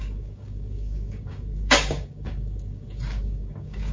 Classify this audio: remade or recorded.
remade